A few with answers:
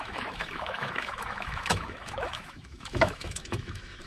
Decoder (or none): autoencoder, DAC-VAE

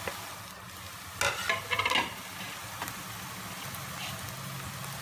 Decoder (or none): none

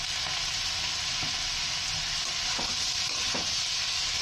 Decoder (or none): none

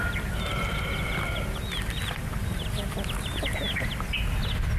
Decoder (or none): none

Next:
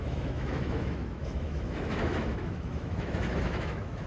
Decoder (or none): autoencoder, DAC-VAE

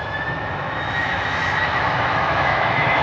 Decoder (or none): autoencoder, DAC-VAE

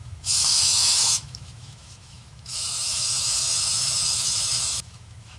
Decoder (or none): autoencoder, DAC-VAE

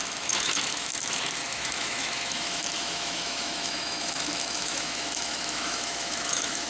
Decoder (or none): autoencoder, DAC-VAE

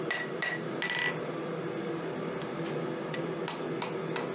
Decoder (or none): none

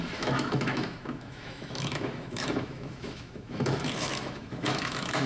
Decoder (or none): autoencoder, DAC-VAE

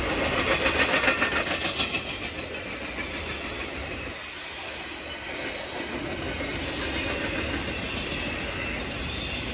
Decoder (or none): none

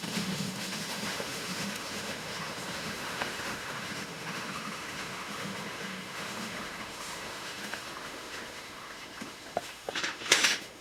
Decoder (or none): autoencoder, DAC-VAE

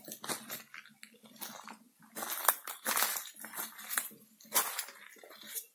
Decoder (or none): none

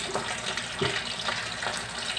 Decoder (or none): none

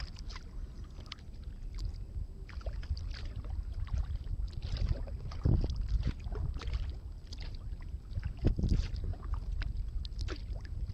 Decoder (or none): none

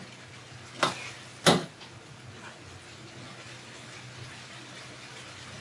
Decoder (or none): none